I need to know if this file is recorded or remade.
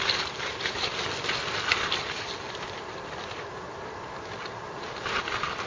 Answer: recorded